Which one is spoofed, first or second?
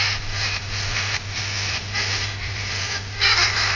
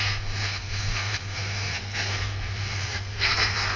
second